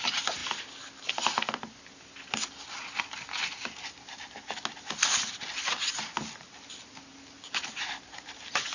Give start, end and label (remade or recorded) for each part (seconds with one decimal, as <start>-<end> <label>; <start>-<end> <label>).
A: 0.0-8.7 recorded